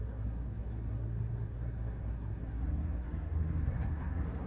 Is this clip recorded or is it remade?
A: remade